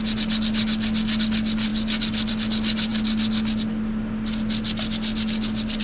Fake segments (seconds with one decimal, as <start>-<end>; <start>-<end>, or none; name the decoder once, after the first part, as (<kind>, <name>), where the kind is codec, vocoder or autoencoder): none

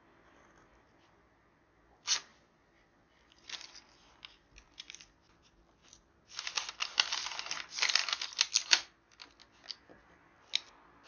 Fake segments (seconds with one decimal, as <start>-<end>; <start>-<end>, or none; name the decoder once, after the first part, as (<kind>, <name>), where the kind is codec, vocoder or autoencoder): none